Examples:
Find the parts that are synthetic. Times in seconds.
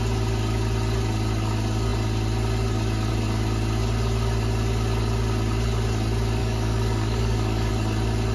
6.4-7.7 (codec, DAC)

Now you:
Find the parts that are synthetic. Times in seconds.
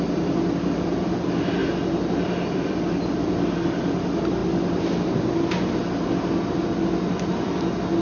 none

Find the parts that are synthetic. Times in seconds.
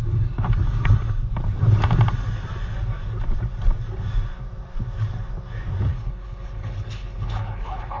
5.9-8.0 (codec, HILCodec)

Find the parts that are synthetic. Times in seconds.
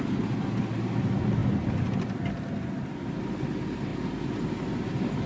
3.9-4.7 (vocoder, BigVGAN v2)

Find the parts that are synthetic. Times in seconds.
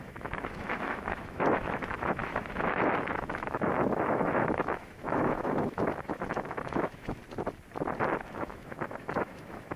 0.0-7.2 (autoencoder, DAC-VAE); 8.3-9.8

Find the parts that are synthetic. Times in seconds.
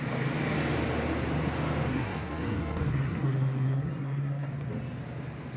1.9-4.5 (codec, SNAC)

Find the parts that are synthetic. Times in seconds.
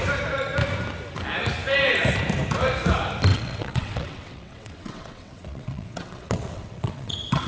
3.3-7.5 (vocoder, WaveNeXt)